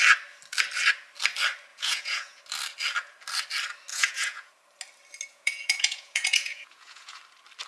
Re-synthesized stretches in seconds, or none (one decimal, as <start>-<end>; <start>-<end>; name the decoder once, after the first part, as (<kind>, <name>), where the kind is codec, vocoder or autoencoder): 1.7-2.4 (vocoder, Vocos); 3.9-4.5; 5.3-7.2